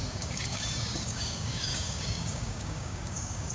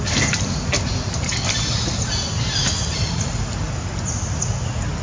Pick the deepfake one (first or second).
first